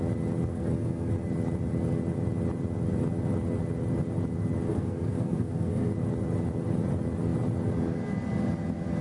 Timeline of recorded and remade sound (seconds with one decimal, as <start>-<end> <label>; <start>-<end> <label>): 0.0-0.5 recorded; 0.5-1.1 remade; 1.1-4.7 recorded; 4.7-5.9 remade; 5.9-9.0 recorded